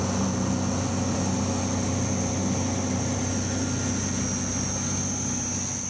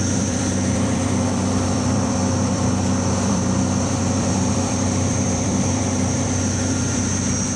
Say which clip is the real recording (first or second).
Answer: first